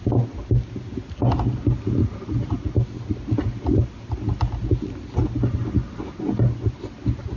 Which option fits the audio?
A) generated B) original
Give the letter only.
B